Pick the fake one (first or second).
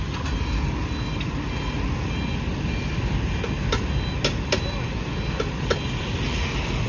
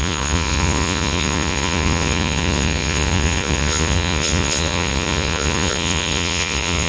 second